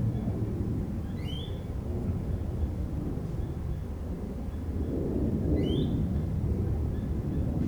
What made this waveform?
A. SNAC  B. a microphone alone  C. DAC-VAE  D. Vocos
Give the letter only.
B